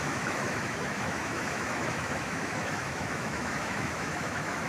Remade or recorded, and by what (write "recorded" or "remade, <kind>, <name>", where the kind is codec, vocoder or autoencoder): remade, autoencoder, DAC-VAE